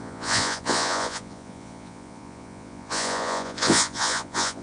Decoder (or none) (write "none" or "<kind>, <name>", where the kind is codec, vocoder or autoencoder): vocoder, Vocos